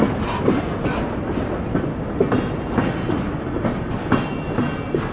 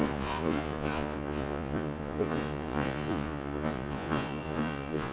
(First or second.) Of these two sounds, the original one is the first